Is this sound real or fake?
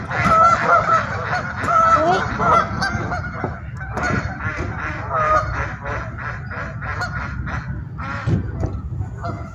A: real